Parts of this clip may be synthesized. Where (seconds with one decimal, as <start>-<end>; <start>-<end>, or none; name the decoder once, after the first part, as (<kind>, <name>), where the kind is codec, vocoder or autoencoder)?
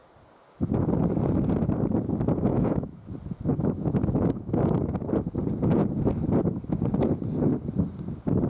2.5-3.1 (autoencoder, DAC-VAE); 3.5-4.7